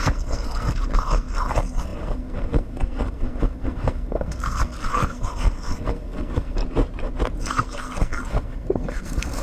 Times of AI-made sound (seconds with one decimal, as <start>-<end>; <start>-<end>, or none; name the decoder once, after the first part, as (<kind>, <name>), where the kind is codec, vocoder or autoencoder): 0.0-6.6 (codec, SNAC); 7.4-9.4